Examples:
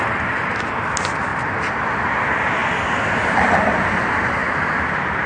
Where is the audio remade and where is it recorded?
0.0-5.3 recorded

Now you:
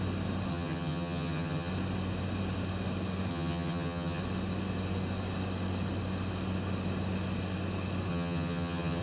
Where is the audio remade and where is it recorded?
0.0-0.5 recorded; 0.5-1.7 remade; 1.7-3.3 recorded; 3.3-4.2 remade; 4.2-8.1 recorded; 8.1-9.0 remade

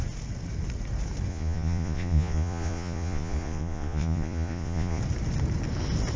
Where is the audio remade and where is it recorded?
0.0-1.3 recorded; 1.3-5.0 remade; 5.0-6.2 recorded

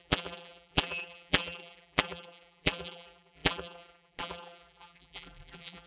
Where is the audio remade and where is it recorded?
0.0-5.9 remade

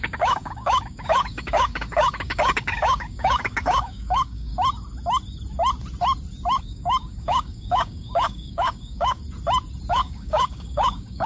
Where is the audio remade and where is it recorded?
0.0-4.5 remade; 4.5-6.6 recorded; 6.6-9.2 remade; 9.2-9.9 recorded; 9.9-11.3 remade

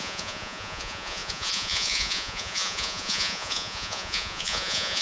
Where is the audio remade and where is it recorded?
0.0-5.0 remade

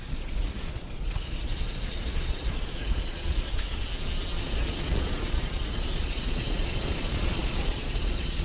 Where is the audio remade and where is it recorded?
0.0-3.8 remade; 3.8-4.4 recorded; 4.4-8.4 remade